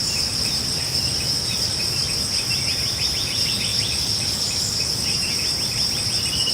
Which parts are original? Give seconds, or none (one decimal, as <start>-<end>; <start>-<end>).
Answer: 2.1-3.7; 5.9-6.5